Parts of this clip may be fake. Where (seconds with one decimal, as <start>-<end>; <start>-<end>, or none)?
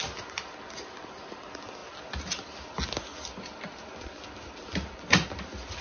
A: none